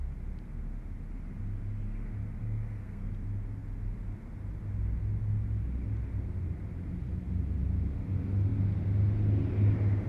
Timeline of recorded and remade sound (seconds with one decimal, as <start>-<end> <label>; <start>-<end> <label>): 0.0-2.4 recorded; 2.4-3.1 remade; 3.1-10.1 recorded